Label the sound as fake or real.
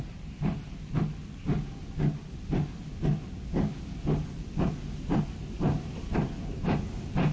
real